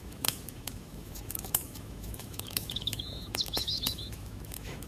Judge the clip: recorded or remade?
remade